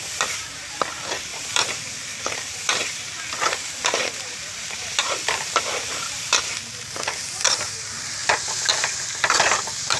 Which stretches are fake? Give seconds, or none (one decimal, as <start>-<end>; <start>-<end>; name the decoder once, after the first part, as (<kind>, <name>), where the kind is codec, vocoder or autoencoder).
1.3-6.6 (vocoder, BigVGAN v2)